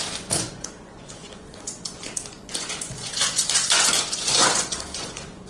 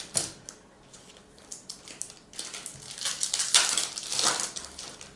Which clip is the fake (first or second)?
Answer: first